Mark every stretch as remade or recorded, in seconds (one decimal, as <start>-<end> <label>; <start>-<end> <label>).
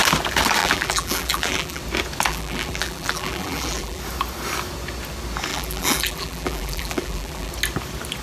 0.0-0.6 recorded; 0.6-1.8 remade; 1.8-2.3 recorded; 2.3-4.0 remade; 4.0-5.5 recorded; 5.5-7.5 remade; 7.5-8.2 recorded